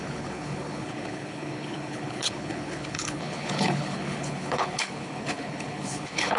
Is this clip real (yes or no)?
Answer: no